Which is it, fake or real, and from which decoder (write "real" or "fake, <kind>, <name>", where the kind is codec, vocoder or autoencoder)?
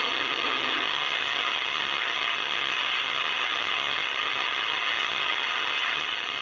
fake, vocoder, HiFi-GAN